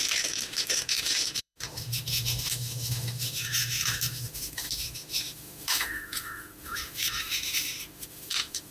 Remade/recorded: remade